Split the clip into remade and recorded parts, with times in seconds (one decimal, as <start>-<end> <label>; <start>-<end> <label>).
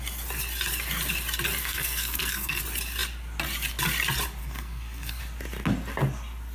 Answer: 0.0-1.6 recorded; 1.6-2.6 remade; 2.6-4.4 recorded; 4.4-5.2 remade; 5.2-6.5 recorded